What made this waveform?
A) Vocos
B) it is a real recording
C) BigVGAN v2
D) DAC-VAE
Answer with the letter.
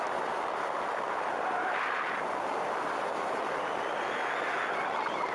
B